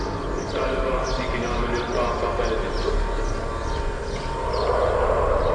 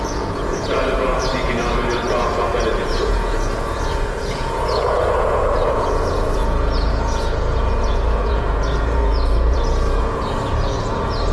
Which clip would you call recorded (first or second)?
first